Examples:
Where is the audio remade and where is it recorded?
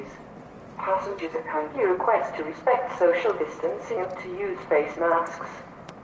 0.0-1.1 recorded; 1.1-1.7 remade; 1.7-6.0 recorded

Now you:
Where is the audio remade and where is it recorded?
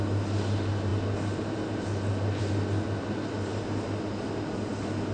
0.0-5.1 recorded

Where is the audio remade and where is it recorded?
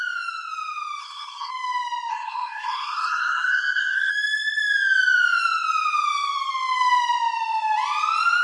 0.0-1.0 recorded; 1.0-1.5 remade; 1.5-2.1 recorded; 2.1-4.1 remade; 4.1-8.4 recorded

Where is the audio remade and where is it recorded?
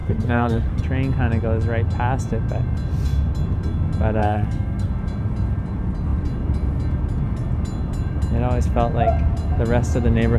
0.0-0.8 remade; 0.8-4.2 recorded; 4.2-4.9 remade; 4.9-10.4 recorded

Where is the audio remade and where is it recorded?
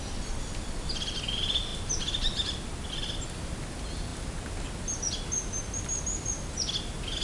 0.0-7.2 recorded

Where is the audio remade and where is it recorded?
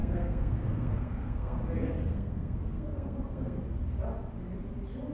0.0-1.6 remade; 1.6-2.1 recorded; 2.1-3.6 remade; 3.6-5.1 recorded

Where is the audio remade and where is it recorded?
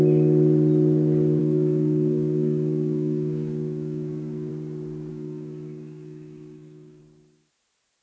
0.0-1.4 recorded; 1.4-4.5 remade; 4.5-5.1 recorded; 5.1-7.0 remade; 7.0-8.0 recorded